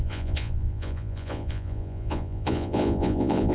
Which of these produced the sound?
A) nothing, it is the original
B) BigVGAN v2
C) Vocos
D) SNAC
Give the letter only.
C